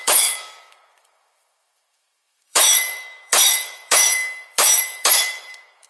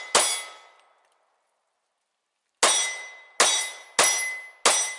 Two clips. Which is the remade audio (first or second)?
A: first